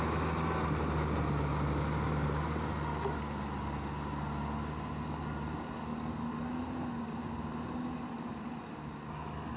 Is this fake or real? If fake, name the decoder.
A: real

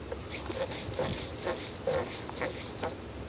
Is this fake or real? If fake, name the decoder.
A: real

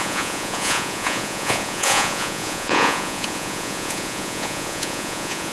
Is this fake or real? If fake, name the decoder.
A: fake, vocoder, Vocos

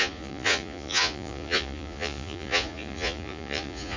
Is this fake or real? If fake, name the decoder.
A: fake, vocoder, Vocos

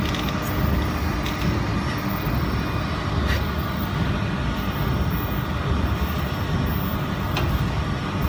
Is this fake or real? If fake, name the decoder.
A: real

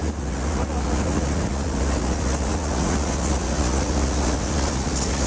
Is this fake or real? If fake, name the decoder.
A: fake, vocoder, Vocos